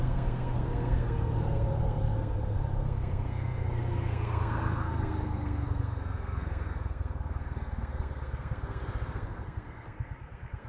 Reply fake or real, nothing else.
fake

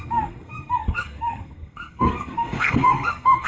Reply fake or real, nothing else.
fake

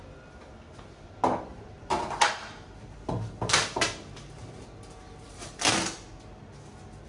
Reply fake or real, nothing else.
real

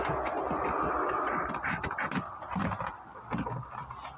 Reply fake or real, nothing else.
real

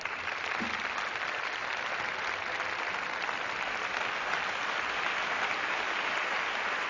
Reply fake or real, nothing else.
real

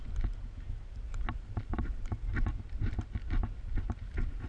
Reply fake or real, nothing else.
real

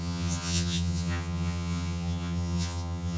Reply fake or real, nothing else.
fake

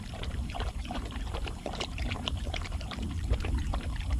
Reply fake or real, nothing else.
fake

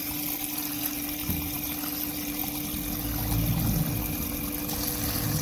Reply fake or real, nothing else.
real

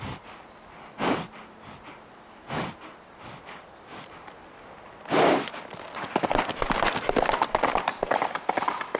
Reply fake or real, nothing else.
real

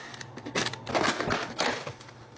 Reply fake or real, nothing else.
real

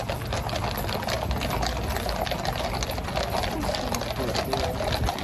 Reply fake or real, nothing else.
real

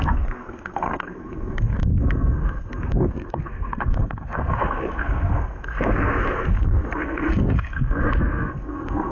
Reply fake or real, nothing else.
fake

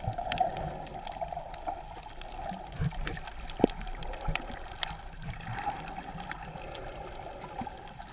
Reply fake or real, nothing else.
real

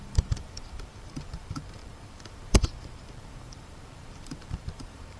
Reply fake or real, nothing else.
fake